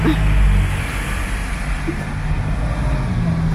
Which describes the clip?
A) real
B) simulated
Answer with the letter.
A